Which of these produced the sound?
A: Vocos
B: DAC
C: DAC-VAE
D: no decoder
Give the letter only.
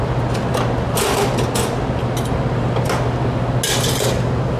D